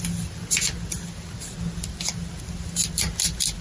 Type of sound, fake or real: real